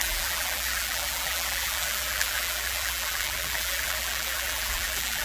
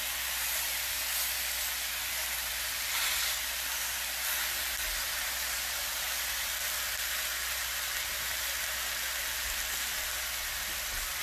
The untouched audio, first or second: second